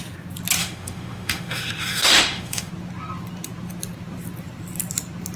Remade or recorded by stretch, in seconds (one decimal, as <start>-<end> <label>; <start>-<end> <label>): 0.0-0.6 recorded; 0.6-2.7 remade; 2.7-5.4 recorded